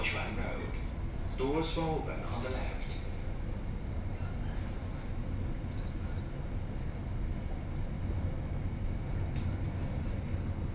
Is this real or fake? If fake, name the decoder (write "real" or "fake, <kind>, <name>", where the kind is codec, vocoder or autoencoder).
real